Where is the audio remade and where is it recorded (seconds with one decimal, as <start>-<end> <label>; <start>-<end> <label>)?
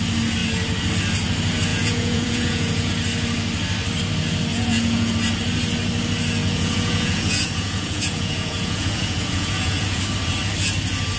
0.0-1.7 recorded; 1.7-2.9 remade; 2.9-4.5 recorded; 4.5-5.1 remade; 5.1-6.4 recorded; 6.4-10.0 remade; 10.0-11.2 recorded